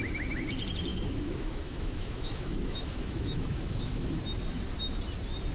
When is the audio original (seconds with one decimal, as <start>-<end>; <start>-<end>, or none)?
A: 0.0-0.9; 4.2-5.5